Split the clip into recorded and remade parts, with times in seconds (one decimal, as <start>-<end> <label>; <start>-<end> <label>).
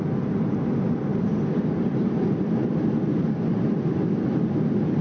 0.0-5.0 recorded